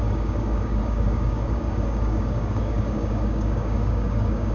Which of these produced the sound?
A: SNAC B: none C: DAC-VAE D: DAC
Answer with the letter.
D